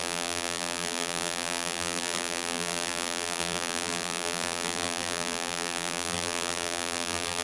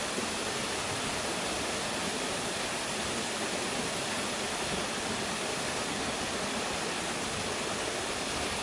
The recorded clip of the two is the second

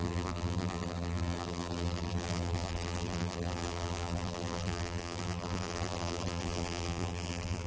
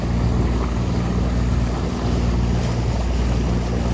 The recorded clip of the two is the second